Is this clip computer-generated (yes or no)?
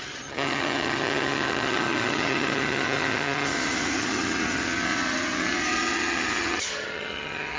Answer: yes